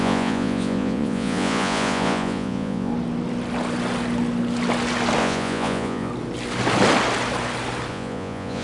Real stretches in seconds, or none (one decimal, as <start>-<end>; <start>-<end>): 2.9-5.2; 6.1-7.9